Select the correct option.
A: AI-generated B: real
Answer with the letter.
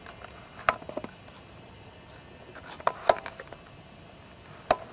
B